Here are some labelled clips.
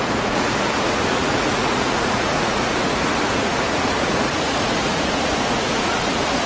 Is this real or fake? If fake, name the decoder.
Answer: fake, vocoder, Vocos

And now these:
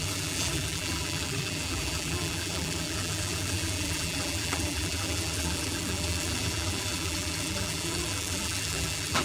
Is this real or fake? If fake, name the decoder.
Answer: fake, vocoder, BigVGAN v2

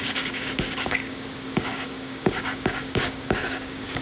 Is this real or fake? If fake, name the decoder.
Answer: fake, codec, DAC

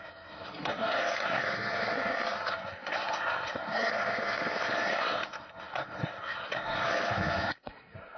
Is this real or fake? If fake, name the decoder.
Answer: fake, codec, SNAC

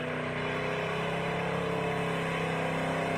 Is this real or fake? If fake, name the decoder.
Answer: real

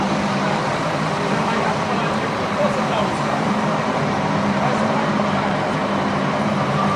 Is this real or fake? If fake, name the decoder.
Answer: fake, vocoder, BigVGAN v2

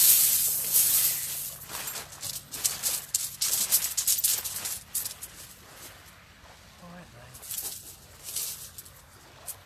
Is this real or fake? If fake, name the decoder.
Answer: real